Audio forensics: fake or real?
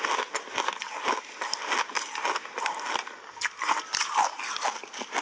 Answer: real